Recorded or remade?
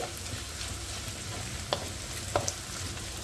recorded